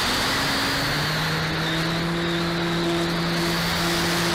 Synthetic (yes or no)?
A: no